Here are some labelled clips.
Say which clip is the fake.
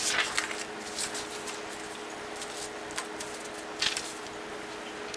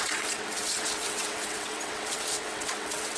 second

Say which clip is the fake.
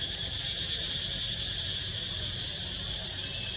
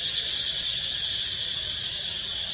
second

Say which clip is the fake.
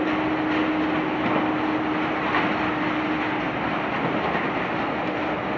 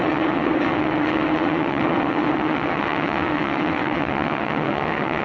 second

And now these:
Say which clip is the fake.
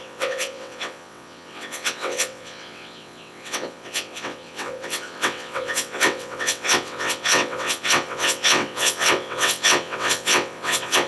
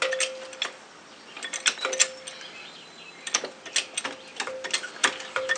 first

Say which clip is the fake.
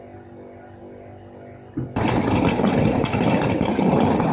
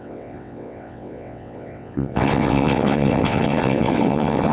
second